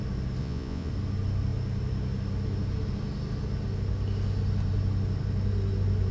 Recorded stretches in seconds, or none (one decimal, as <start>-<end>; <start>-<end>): 0.0-0.4; 0.9-6.1